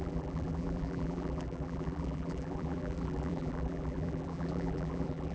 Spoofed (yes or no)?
yes